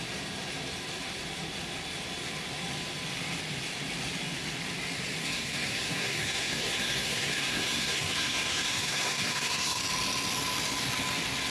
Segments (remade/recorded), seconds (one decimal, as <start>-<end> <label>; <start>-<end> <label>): 0.0-5.2 recorded; 5.2-9.8 remade; 9.8-11.5 recorded